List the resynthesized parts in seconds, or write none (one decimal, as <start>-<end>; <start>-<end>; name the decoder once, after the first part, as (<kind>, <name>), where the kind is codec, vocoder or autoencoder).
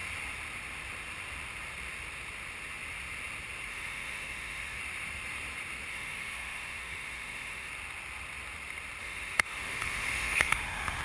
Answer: 3.7-4.8 (autoencoder, DAC-VAE); 5.9-7.7; 9.0-11.0